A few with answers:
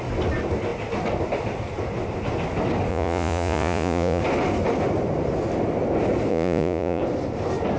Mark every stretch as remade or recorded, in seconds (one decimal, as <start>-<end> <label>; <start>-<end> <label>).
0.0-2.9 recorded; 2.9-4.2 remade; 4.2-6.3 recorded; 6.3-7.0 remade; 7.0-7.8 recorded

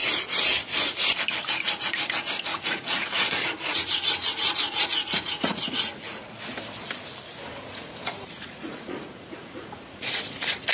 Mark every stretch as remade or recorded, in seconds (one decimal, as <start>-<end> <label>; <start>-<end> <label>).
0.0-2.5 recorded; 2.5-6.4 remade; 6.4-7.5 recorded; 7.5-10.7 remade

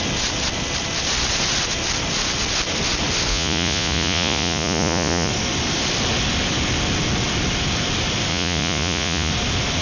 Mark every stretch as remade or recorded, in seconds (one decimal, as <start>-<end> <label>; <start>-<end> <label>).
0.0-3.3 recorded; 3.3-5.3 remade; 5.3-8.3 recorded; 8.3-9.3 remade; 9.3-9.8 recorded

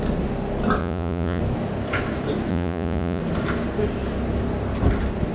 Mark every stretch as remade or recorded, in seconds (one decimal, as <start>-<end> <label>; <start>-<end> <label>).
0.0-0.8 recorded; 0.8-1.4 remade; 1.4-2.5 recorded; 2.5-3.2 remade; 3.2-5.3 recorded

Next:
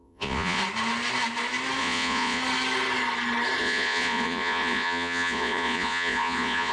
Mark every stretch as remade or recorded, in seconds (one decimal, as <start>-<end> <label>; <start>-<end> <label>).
0.0-0.6 remade; 0.6-1.8 recorded; 1.8-2.4 remade; 2.4-3.6 recorded; 3.6-6.7 remade